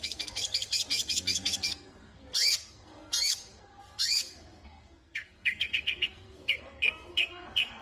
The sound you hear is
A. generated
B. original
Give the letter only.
A